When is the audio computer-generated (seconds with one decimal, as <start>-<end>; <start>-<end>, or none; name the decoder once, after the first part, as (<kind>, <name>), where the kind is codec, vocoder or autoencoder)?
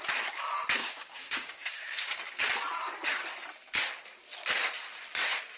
0.8-2.2 (codec, DAC)